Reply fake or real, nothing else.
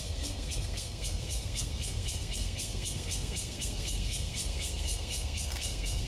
fake